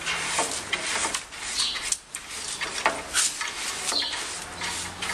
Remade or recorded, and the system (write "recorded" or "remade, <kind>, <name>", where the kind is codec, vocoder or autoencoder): recorded